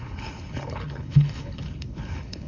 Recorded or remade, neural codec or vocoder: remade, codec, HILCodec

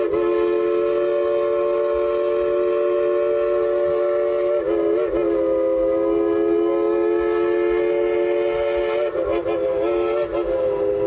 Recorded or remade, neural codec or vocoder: recorded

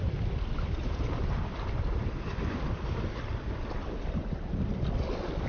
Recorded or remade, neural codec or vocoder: recorded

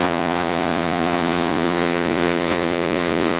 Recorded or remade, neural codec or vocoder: remade, vocoder, Vocos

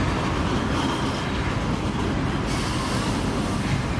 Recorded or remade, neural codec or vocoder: recorded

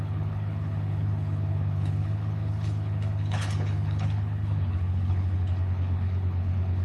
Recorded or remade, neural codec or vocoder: remade, codec, HILCodec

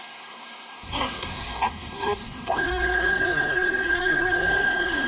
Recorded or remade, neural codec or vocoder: remade, codec, SNAC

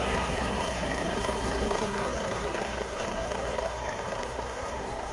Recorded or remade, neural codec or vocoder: remade, codec, SNAC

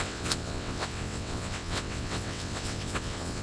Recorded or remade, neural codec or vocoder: remade, vocoder, WaveNeXt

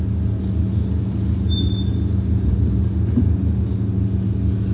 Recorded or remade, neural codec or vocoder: recorded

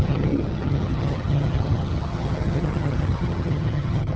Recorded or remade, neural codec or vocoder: remade, vocoder, HiFi-GAN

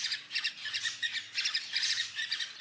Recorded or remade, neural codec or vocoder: recorded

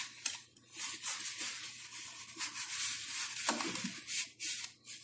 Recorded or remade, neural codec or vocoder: recorded